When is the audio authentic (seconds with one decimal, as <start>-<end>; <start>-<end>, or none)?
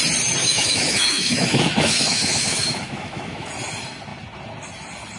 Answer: 0.0-0.4; 3.5-5.2